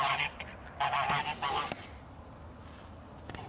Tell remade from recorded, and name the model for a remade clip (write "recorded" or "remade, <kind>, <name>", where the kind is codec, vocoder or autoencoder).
recorded